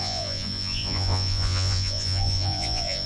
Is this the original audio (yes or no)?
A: no